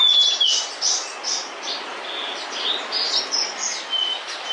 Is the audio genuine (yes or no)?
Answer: yes